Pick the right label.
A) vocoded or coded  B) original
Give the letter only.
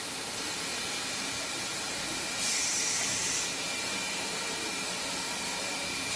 A